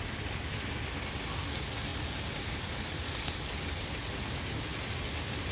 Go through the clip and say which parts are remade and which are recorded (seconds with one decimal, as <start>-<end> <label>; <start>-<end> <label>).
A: 0.0-5.5 recorded